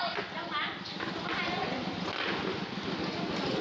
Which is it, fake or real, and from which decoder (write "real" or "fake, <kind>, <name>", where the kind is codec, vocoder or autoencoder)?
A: real